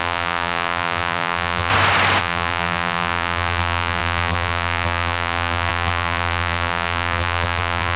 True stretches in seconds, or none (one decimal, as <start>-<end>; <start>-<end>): 1.7-2.2